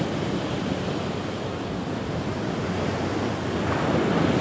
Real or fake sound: real